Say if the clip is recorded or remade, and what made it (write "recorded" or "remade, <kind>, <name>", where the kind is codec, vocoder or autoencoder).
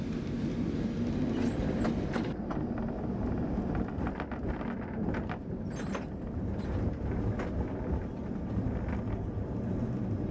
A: recorded